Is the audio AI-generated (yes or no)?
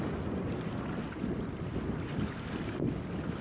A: no